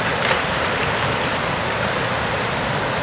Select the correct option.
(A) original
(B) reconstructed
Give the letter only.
A